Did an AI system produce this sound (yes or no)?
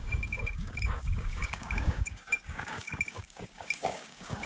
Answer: yes